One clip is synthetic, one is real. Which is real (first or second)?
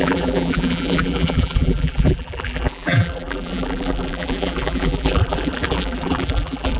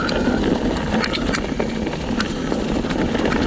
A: second